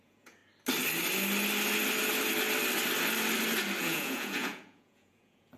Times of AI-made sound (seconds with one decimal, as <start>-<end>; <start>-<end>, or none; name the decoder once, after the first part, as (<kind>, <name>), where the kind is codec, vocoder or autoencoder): 0.0-0.4 (vocoder, Vocos); 3.8-5.6

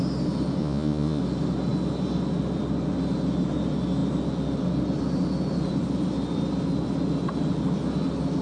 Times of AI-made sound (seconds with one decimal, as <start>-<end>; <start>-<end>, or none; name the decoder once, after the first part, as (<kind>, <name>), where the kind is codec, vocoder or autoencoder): 0.6-1.2 (vocoder, Vocos)

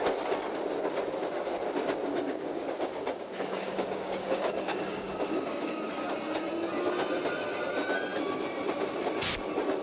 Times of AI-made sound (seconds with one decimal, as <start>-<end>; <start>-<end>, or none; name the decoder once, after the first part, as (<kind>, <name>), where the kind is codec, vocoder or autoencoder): 2.0-5.8 (codec, DAC)

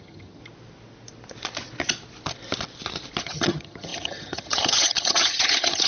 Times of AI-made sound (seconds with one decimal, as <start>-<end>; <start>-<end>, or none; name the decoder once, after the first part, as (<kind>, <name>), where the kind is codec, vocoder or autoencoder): 0.0-0.4 (vocoder, HiFi-GAN); 3.2-5.9

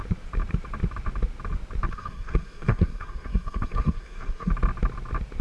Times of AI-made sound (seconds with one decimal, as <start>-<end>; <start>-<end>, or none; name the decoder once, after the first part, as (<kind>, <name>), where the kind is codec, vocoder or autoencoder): 1.9-4.5 (codec, SNAC)

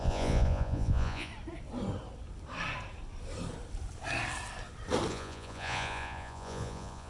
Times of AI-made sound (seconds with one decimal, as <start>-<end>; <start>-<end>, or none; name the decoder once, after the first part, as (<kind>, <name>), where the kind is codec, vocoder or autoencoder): 0.0-1.3 (vocoder, Vocos); 5.1-7.1

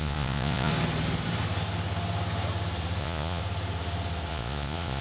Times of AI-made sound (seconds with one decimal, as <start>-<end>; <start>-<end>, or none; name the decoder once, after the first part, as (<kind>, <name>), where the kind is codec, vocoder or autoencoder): 0.0-0.7 (vocoder, Vocos); 3.0-3.4; 4.3-5.0

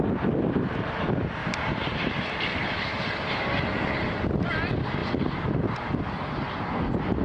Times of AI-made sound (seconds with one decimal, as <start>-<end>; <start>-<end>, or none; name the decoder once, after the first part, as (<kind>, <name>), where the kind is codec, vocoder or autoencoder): 1.4-4.2 (vocoder, BigVGAN v2); 5.0-6.6